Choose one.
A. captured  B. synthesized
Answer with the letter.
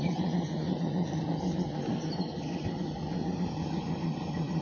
A